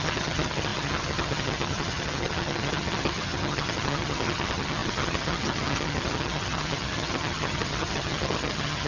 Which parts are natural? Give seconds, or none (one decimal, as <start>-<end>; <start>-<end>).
none